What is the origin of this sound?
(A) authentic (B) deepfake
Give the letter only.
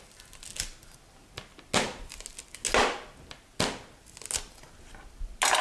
A